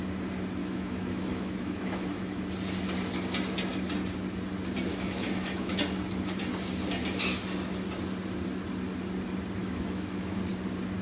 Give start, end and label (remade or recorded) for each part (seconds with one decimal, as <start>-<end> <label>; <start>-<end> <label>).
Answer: 0.0-0.6 recorded; 0.6-2.4 remade; 2.4-4.9 recorded; 4.9-5.8 remade; 5.8-9.6 recorded; 9.6-10.4 remade; 10.4-11.0 recorded